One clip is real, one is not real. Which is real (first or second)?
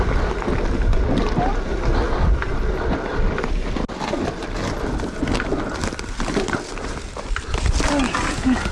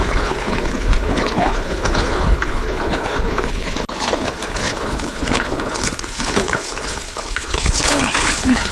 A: first